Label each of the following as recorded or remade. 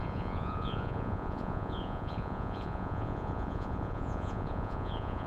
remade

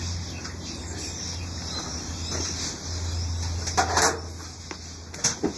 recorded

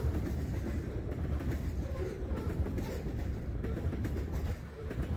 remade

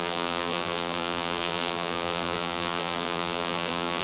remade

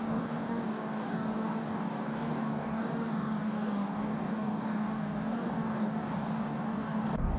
remade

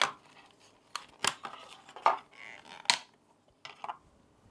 recorded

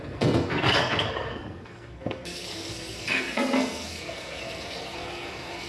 remade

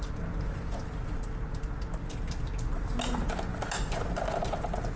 recorded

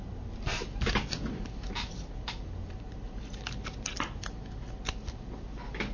recorded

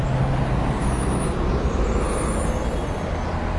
recorded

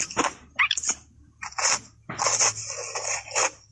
recorded